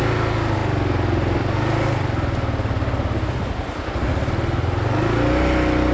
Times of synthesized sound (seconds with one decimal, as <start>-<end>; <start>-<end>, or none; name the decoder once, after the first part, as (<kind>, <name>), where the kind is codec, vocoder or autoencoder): none

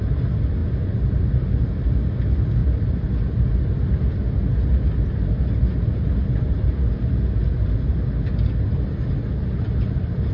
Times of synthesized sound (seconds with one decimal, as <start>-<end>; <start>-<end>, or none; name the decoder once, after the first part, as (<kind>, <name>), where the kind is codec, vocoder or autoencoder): 0.6-2.1 (vocoder, BigVGAN v2); 2.6-3.5

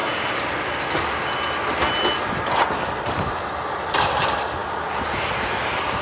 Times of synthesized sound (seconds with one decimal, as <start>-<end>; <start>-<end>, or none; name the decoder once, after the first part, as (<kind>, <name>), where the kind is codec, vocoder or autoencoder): 2.8-6.0 (vocoder, BigVGAN v2)

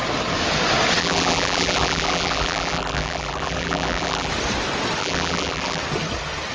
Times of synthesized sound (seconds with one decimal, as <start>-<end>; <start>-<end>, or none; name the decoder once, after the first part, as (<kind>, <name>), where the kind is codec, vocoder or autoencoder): 1.0-4.3 (vocoder, BigVGAN v2); 5.0-5.8

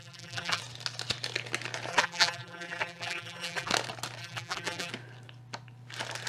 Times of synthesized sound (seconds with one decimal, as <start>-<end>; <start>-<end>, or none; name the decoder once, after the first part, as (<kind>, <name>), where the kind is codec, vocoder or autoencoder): 0.0-0.6 (vocoder, BigVGAN v2); 1.9-3.7; 4.2-4.9

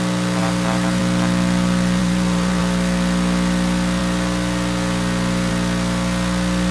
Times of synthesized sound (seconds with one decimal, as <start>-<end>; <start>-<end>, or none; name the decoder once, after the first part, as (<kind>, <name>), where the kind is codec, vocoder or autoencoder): 0.4-1.0 (vocoder, BigVGAN v2); 2.0-2.6

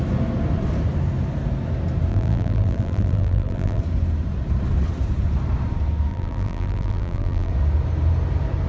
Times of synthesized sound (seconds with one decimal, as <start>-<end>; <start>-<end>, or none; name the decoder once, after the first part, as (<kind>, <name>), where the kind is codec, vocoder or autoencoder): 2.1-3.8 (vocoder, BigVGAN v2); 6.1-7.5

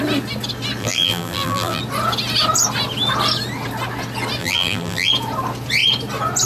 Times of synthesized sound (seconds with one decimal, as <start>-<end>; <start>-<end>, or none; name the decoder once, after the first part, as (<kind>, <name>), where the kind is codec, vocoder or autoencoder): 0.8-1.8 (vocoder, BigVGAN v2); 4.4-5.1